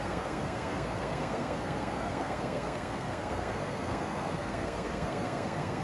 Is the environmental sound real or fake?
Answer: fake